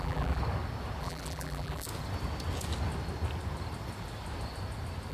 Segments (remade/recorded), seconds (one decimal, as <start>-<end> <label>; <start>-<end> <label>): 0.0-0.4 remade; 0.4-1.0 recorded; 1.0-1.9 remade; 1.9-5.1 recorded